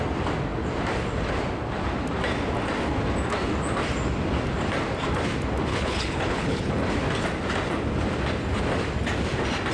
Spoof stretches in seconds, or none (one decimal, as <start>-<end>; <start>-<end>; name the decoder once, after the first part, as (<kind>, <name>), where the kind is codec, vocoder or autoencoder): 5.7-6.7 (codec, HILCodec)